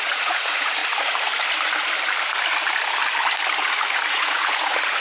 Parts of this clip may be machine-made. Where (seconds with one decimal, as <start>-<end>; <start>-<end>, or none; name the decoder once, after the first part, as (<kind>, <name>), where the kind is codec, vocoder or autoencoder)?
0.0-0.8 (vocoder, Vocos); 3.6-5.0